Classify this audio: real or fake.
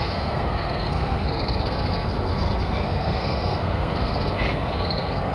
fake